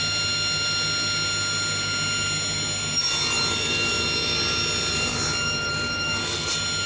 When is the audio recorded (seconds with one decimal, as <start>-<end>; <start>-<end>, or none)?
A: 0.0-6.9